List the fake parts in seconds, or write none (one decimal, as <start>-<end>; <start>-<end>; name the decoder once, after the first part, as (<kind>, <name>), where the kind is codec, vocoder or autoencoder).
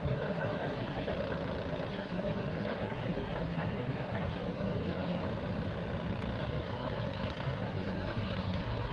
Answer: 0.0-1.1 (codec, SNAC); 1.9-5.2; 6.4-8.9